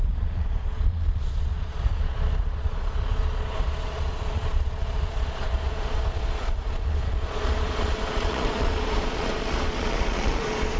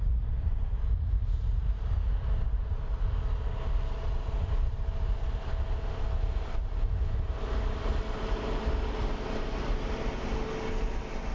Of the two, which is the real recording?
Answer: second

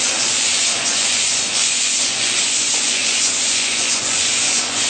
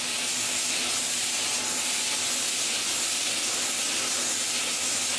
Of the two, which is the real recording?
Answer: second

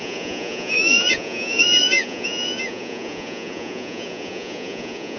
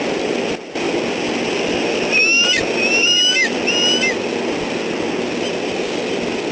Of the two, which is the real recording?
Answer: second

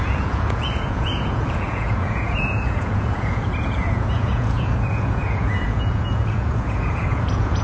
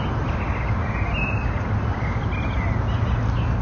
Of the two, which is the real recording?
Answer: second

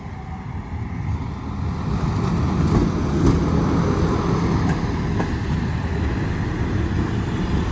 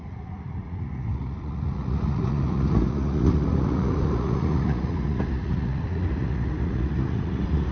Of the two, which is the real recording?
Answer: first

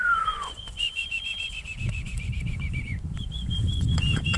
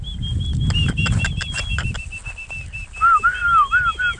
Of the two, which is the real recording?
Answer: second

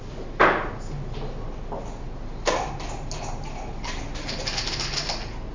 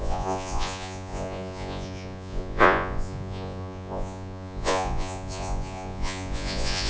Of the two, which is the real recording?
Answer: first